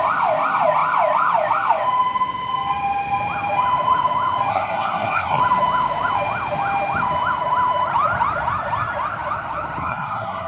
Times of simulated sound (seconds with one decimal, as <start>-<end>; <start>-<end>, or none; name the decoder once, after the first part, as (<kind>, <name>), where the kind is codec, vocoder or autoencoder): 4.5-5.4 (codec, SNAC); 9.8-10.5